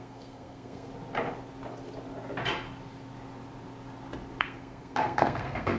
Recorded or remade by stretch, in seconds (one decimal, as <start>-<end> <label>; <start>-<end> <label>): 0.0-0.9 remade; 0.9-4.4 recorded; 4.4-5.8 remade